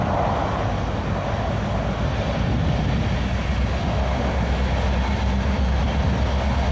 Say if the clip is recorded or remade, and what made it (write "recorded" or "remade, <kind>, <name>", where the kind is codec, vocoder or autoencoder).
recorded